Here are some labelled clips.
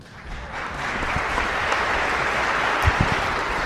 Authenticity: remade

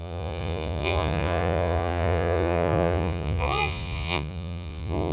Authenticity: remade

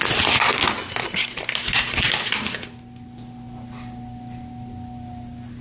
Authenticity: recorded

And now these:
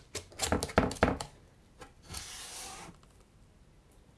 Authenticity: recorded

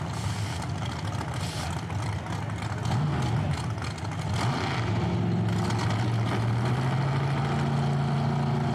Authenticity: recorded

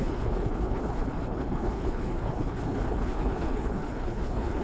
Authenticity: remade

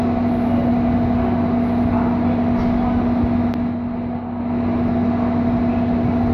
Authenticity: recorded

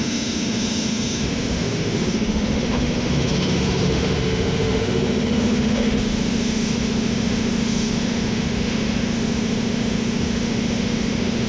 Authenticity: remade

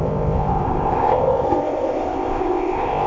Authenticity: remade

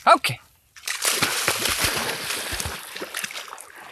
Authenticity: recorded